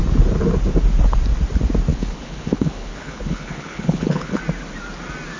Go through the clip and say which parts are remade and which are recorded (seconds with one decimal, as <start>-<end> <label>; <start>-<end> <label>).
0.0-1.9 recorded; 1.9-4.4 remade; 4.4-5.4 recorded